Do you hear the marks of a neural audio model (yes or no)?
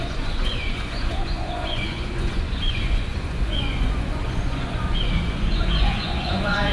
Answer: yes